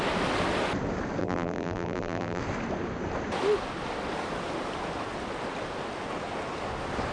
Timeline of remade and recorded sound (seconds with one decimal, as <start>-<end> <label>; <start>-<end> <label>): 0.0-1.2 recorded; 1.2-2.4 remade; 2.4-7.1 recorded

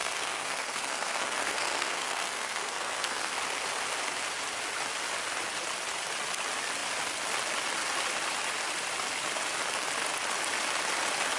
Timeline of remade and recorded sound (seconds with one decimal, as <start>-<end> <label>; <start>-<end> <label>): 0.0-3.3 remade; 3.3-11.4 recorded

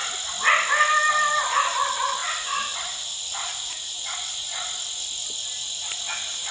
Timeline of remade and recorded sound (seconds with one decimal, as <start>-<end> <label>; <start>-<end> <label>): 0.0-6.5 recorded

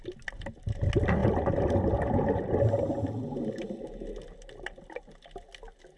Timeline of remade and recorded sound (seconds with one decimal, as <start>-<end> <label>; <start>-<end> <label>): 0.0-6.0 recorded

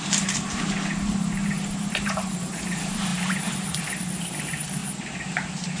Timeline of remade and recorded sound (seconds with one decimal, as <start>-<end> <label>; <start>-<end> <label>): 0.0-4.8 remade; 4.8-5.8 recorded

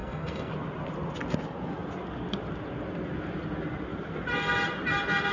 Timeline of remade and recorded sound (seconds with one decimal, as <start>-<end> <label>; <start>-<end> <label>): 0.0-0.5 remade; 0.5-5.3 recorded

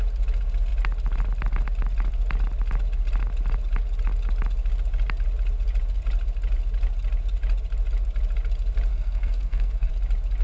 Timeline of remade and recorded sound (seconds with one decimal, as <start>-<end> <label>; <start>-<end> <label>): 0.0-8.9 recorded; 8.9-9.9 remade; 9.9-10.4 recorded